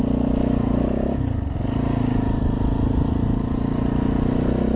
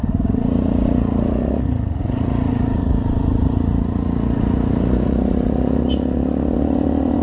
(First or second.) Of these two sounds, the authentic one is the first